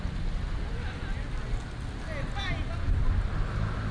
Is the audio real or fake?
real